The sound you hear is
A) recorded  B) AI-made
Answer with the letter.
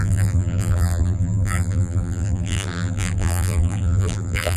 B